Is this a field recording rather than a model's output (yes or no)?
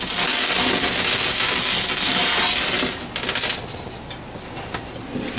yes